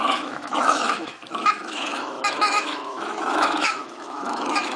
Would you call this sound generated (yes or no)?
yes